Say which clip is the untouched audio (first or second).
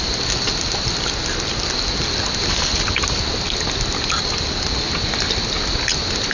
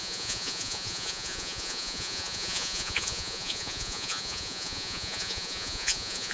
first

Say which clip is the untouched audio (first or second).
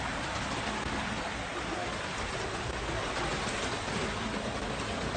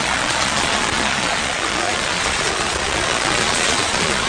first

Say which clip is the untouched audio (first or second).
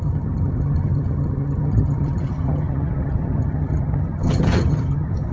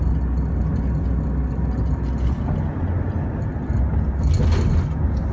second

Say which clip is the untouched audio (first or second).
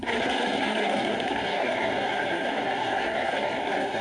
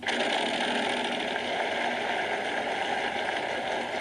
second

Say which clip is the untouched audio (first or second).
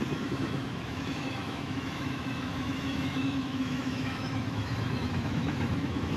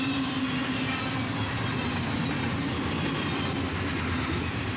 second